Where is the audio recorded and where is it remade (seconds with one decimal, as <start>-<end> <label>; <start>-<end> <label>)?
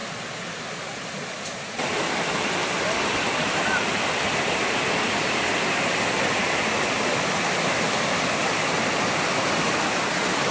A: 0.0-10.5 recorded